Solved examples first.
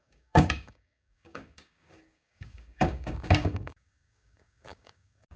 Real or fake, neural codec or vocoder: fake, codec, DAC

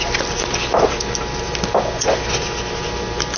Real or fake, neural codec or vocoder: real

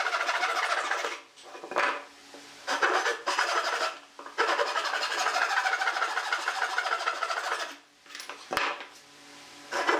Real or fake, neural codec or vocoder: real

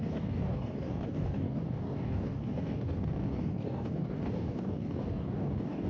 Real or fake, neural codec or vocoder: fake, codec, DAC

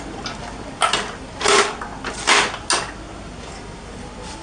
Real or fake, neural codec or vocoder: real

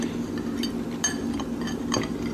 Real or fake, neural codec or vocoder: real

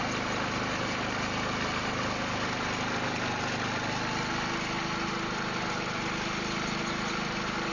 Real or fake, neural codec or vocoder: real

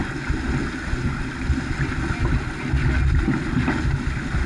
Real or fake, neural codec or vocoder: real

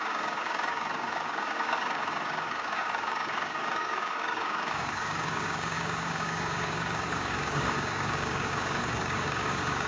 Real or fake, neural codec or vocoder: fake, codec, DAC